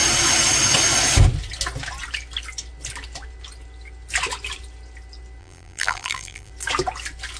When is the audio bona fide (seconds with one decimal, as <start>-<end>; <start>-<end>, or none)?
0.0-5.4; 6.5-7.4